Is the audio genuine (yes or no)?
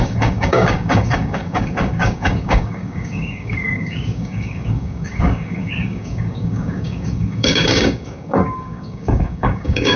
no